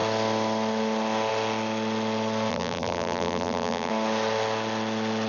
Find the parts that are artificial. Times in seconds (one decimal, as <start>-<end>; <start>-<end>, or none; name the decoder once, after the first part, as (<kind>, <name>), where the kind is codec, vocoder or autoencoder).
2.5-3.9 (vocoder, BigVGAN v2)